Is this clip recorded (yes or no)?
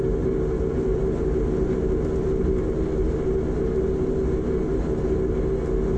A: yes